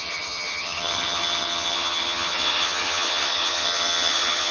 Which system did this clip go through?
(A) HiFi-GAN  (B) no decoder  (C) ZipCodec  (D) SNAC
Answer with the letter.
A